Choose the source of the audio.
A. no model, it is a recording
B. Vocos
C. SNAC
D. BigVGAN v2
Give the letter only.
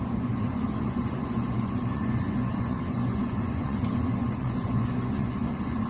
B